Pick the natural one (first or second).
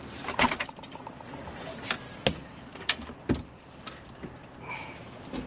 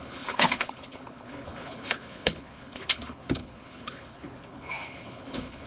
first